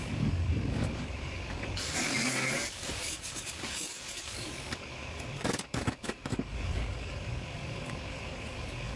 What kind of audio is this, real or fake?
fake